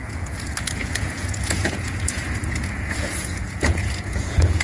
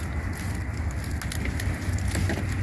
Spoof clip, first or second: first